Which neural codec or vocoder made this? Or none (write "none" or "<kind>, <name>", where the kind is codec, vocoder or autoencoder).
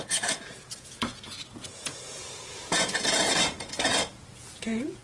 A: vocoder, Vocos